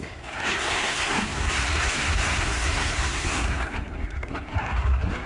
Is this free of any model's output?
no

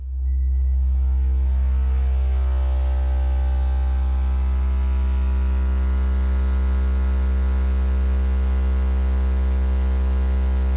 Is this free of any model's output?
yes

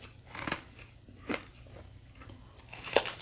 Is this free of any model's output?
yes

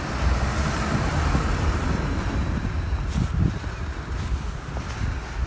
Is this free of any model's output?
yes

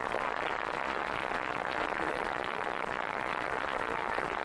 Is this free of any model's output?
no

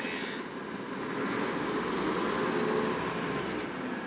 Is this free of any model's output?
yes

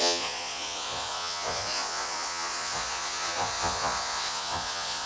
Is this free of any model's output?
no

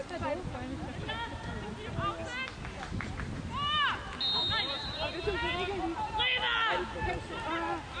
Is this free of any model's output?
yes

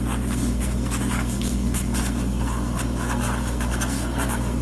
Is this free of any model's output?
no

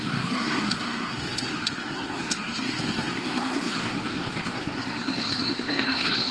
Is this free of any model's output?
no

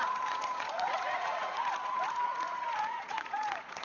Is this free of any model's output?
no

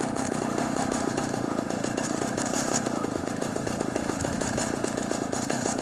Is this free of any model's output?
no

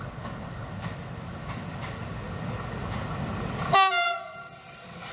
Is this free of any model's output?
yes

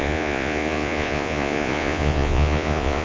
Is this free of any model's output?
no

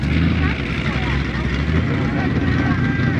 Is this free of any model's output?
yes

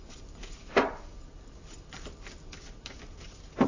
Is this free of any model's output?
yes